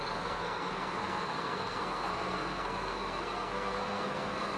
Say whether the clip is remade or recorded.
remade